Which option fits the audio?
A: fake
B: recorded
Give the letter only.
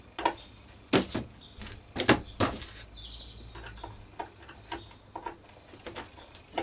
B